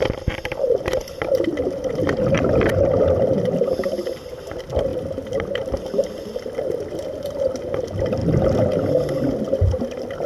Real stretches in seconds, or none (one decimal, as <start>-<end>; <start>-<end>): 0.0-1.0; 2.7-4.9; 7.5-8.2; 8.9-10.3